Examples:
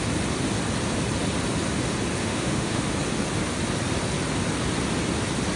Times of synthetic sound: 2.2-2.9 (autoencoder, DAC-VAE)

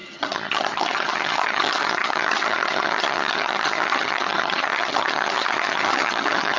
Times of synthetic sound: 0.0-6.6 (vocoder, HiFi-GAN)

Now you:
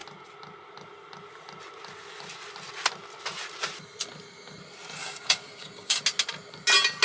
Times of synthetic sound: 5.0-6.0 (codec, DAC)

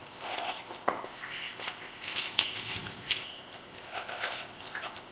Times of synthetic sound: 0.0-5.1 (codec, ZipCodec)

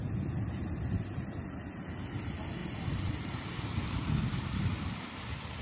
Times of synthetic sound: none